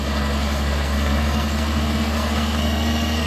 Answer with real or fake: fake